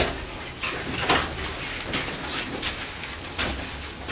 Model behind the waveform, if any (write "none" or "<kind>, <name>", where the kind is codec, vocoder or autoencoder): none